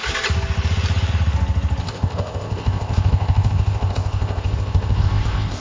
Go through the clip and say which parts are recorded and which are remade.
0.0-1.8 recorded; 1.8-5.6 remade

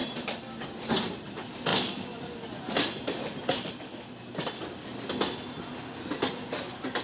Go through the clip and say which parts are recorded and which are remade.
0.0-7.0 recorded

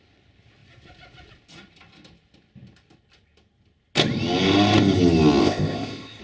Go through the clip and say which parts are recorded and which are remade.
0.0-5.4 recorded; 5.4-6.2 remade